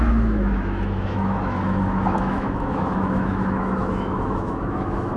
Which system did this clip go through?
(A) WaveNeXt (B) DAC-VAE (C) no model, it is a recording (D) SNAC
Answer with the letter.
B